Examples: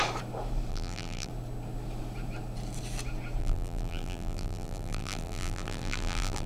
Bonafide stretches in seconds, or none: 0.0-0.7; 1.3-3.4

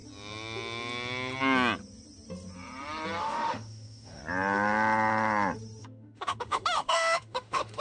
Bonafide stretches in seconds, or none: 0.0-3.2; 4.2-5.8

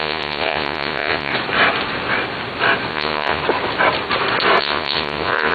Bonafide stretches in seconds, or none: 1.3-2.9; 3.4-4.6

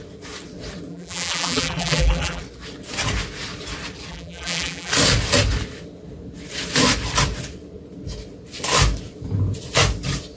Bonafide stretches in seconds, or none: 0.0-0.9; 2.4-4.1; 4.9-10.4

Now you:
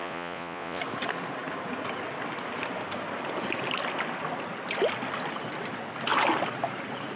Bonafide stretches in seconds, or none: 0.8-7.2

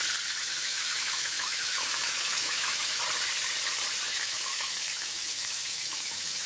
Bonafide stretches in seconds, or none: 0.0-0.4; 3.0-4.1

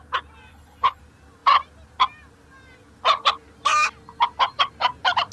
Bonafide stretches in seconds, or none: 0.0-0.5; 1.0-5.3